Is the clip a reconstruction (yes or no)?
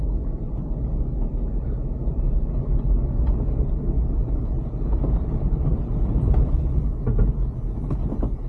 no